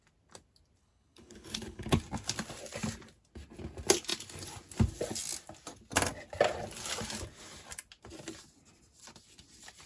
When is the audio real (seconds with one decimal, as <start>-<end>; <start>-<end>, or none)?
0.0-0.8; 2.0-9.9